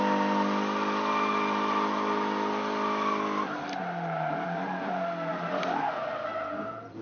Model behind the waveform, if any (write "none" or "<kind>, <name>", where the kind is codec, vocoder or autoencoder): none